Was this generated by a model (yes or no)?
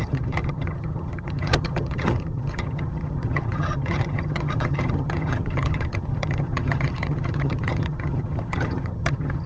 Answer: yes